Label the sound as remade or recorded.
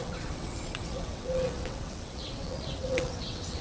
remade